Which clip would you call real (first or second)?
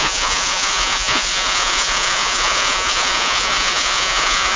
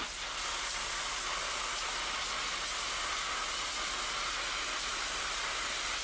second